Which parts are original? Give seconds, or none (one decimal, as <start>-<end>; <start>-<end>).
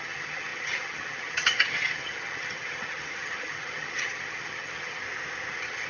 5.0-5.5